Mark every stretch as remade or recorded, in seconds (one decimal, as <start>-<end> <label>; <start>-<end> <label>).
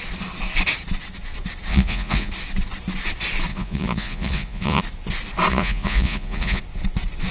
0.0-1.7 recorded; 1.7-2.3 remade; 2.3-3.5 recorded; 3.5-4.8 remade; 4.8-5.5 recorded; 5.5-6.6 remade; 6.6-7.3 recorded